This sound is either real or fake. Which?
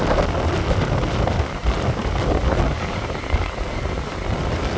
real